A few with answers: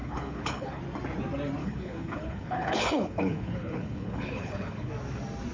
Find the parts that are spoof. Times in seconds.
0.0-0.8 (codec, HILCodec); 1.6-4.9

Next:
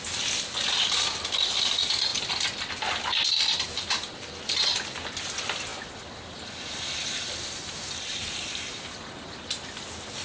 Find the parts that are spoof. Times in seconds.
none

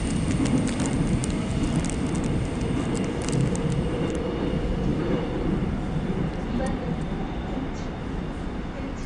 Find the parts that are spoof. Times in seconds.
none

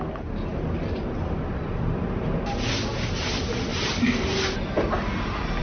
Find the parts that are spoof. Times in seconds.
3.7-4.4 (vocoder, BigVGAN v2)

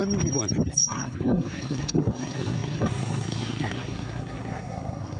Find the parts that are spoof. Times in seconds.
0.7-5.2 (codec, SNAC)